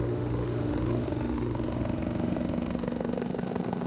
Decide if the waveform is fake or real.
fake